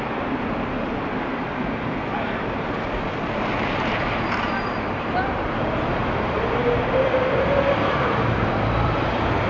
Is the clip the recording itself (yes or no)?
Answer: no